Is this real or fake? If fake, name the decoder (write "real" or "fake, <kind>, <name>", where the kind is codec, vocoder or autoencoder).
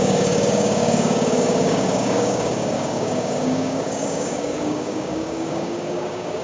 fake, codec, DAC